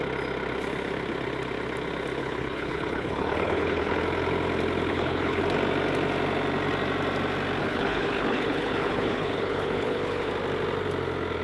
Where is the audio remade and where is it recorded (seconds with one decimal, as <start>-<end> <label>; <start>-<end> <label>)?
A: 0.0-2.2 recorded; 2.2-4.0 remade; 4.0-4.9 recorded; 4.9-5.4 remade; 5.4-7.6 recorded; 7.6-10.3 remade; 10.3-11.4 recorded